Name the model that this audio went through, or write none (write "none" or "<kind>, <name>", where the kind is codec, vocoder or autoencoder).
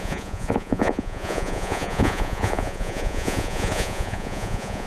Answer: vocoder, Vocos